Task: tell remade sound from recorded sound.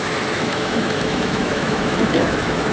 remade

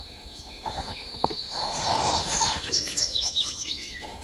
remade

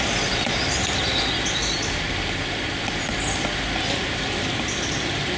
recorded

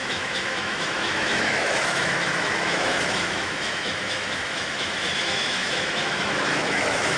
remade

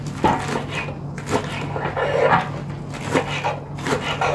recorded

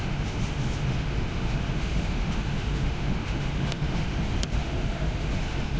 remade